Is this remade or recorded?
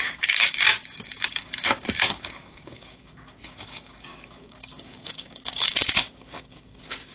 remade